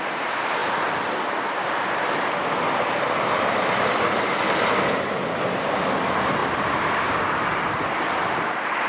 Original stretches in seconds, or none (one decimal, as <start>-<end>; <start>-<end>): 0.0-6.4